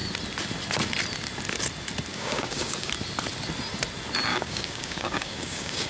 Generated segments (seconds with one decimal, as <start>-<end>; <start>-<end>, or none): 2.1-2.9; 4.3-5.9